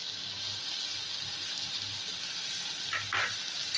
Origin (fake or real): real